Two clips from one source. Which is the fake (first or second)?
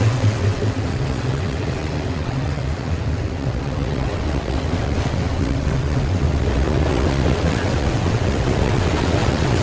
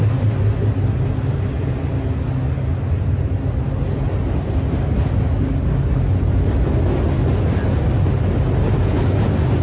first